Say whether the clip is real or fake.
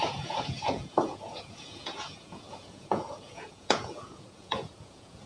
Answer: fake